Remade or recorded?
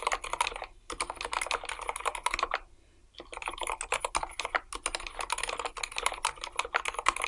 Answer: recorded